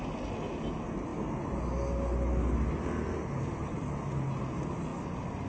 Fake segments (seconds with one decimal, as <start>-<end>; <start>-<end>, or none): none